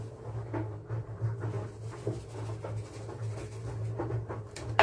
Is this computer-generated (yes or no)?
no